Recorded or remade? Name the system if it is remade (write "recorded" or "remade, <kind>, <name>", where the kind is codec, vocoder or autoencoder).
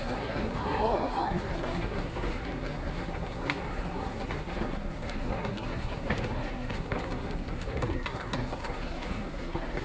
remade, codec, SNAC